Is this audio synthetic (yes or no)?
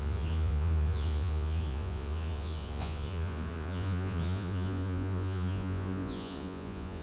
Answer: yes